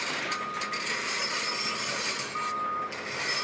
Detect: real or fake real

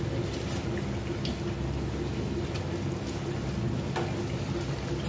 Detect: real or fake real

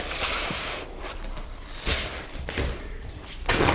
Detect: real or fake fake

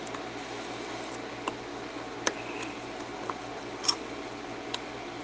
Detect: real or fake real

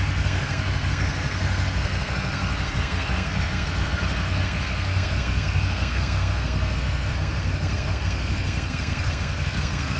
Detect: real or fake fake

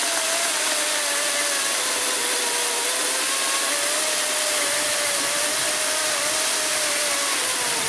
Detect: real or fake real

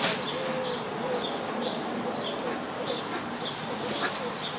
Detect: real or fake real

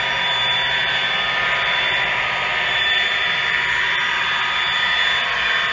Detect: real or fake real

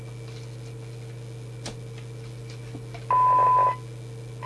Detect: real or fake real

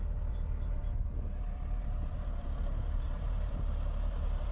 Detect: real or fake fake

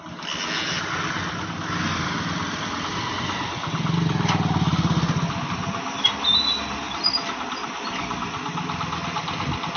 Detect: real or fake real